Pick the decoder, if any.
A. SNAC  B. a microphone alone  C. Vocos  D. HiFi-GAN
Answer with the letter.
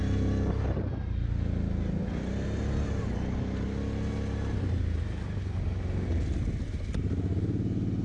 B